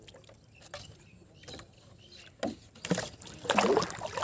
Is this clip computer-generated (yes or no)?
no